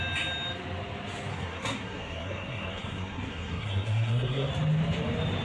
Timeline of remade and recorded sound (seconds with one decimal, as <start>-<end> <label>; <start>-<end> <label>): 0.0-1.3 recorded; 1.3-4.5 remade; 4.5-5.4 recorded